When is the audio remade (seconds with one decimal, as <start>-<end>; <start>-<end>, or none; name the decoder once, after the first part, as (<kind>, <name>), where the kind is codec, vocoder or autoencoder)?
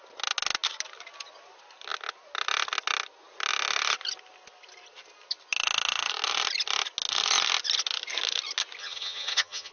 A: 8.8-9.7 (vocoder, HiFi-GAN)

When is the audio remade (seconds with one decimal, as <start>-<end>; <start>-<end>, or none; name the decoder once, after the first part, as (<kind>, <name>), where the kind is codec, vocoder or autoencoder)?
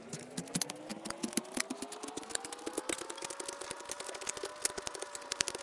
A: none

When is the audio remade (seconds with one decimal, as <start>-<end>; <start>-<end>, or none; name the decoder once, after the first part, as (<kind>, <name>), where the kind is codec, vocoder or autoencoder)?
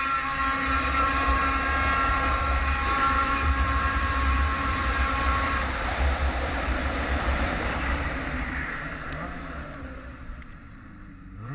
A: 0.0-1.4 (vocoder, BigVGAN v2); 2.1-11.5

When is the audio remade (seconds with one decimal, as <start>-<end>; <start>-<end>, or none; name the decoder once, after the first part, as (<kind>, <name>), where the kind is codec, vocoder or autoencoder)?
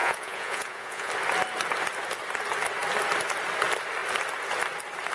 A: 0.0-1.1 (vocoder, Vocos)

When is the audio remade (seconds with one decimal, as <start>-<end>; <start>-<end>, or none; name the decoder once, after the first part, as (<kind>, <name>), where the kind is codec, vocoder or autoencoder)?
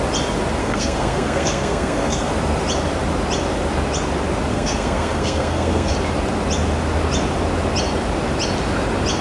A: 0.6-2.3 (codec, SNAC); 4.5-5.9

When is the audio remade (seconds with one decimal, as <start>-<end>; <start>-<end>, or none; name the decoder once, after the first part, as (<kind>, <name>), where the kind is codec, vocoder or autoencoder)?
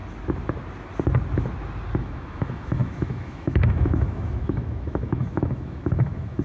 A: 2.0-6.4 (autoencoder, DAC-VAE)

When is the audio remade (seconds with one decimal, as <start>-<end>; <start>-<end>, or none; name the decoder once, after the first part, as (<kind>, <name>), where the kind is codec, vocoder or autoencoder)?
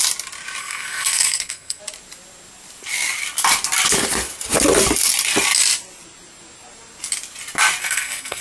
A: 0.6-1.8 (codec, SNAC); 7.8-8.4